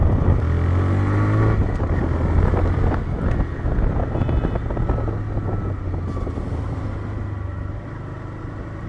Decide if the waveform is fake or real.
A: real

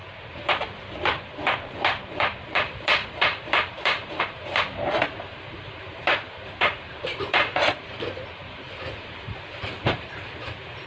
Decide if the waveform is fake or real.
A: fake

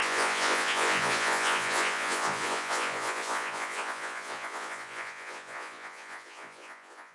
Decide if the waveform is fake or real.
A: fake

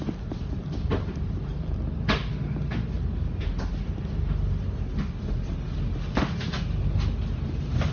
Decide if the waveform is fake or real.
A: real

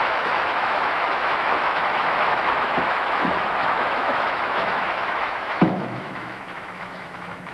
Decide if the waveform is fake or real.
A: fake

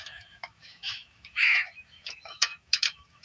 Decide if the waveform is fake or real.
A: fake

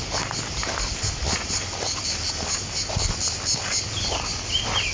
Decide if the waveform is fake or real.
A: real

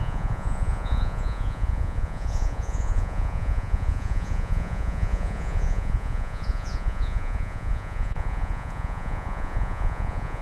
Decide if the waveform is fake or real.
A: fake